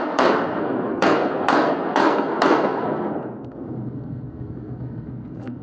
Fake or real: fake